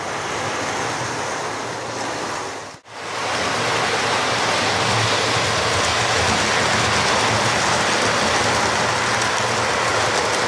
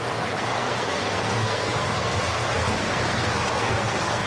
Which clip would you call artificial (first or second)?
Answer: second